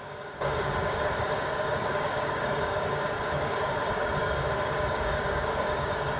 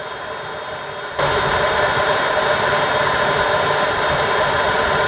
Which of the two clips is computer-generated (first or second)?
first